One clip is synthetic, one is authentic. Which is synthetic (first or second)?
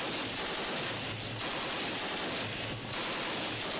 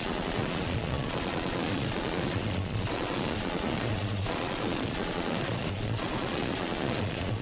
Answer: second